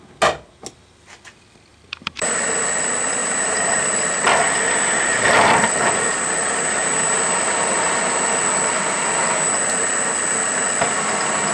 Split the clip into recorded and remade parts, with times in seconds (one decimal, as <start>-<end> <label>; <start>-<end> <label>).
0.0-1.7 recorded; 1.7-2.5 remade; 2.5-3.2 recorded; 3.2-8.0 remade; 8.0-11.5 recorded